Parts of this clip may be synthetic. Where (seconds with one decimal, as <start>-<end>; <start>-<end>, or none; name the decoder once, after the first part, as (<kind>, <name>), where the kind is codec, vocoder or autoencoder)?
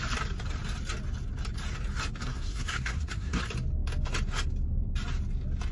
2.2-3.4 (codec, SNAC)